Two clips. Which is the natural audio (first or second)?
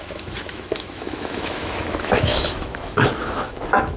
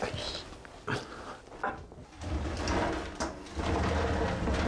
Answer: second